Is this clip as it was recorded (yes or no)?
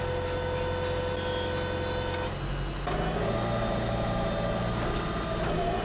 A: yes